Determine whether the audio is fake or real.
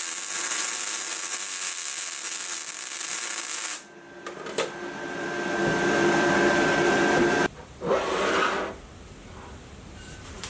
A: fake